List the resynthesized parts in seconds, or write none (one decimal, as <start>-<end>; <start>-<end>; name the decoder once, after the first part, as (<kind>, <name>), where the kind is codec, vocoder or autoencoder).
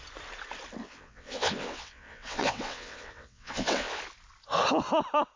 0.8-4.0 (vocoder, WaveNeXt)